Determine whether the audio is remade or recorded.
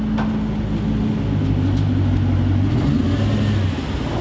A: recorded